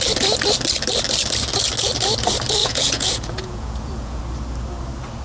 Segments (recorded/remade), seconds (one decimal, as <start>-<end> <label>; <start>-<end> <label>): 0.0-2.6 recorded; 2.6-4.2 remade; 4.2-5.2 recorded